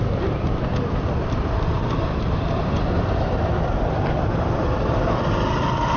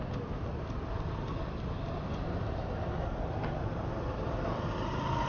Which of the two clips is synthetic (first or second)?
first